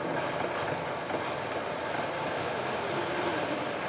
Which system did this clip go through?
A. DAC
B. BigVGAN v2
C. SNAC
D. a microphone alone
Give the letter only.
D